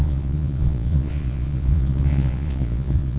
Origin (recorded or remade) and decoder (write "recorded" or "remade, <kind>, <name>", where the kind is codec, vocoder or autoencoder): remade, vocoder, Vocos